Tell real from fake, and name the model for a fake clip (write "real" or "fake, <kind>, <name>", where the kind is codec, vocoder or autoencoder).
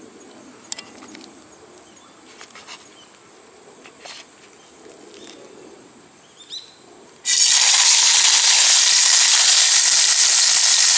real